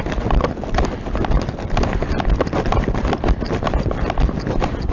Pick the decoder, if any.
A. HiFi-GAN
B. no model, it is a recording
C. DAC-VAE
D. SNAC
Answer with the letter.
B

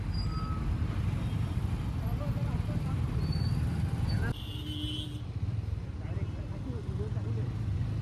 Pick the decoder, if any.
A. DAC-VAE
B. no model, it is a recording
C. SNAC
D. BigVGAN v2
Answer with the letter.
B